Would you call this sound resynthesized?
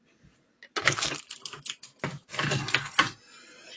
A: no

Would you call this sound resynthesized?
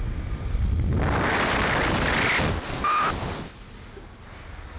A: no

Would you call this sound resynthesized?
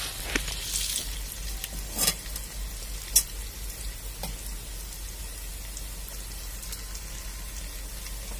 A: no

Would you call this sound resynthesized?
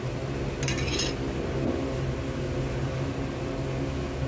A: no